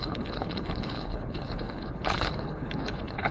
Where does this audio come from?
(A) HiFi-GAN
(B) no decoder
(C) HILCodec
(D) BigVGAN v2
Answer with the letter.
C